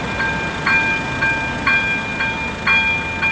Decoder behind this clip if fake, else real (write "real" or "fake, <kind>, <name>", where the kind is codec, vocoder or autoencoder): real